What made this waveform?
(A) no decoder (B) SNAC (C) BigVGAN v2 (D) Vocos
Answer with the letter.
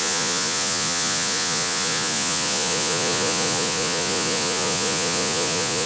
D